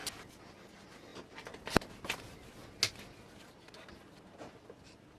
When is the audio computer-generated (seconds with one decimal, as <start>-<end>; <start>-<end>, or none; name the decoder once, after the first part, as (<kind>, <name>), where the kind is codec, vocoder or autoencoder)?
none